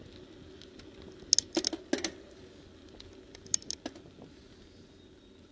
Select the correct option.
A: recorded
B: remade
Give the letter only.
A